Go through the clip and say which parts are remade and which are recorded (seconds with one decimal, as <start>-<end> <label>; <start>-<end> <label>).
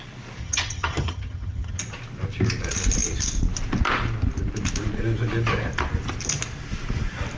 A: 0.0-0.4 recorded; 0.4-1.8 remade; 1.8-7.4 recorded